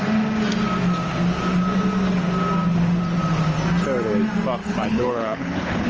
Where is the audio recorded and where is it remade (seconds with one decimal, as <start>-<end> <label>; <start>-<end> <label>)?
0.0-4.6 recorded; 4.6-5.9 remade